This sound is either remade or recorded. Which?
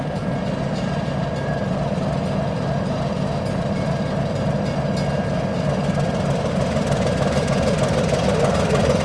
recorded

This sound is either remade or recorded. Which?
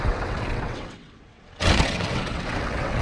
remade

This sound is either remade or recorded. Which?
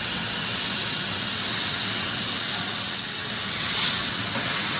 remade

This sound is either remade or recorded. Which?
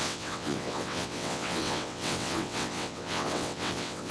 remade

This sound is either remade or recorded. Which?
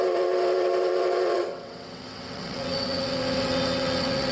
remade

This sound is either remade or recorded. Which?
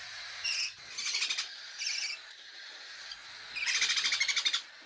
recorded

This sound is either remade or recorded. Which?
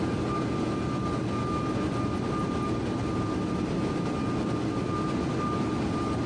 recorded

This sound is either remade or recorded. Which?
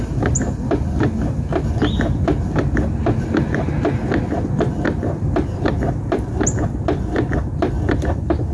recorded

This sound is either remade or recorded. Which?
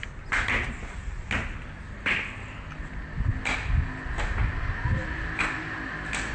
recorded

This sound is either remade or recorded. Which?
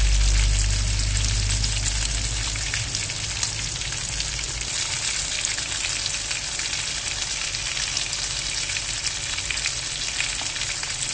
recorded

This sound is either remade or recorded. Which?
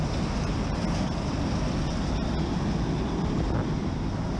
recorded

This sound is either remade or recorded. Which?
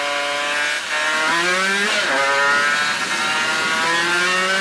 recorded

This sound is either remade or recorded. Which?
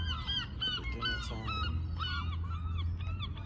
recorded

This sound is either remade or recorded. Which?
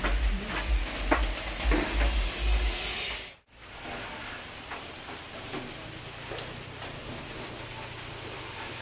recorded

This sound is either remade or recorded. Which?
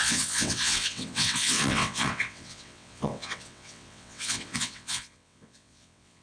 remade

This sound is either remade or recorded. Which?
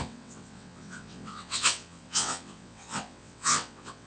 remade